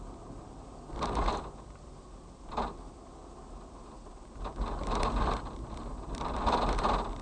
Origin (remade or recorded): recorded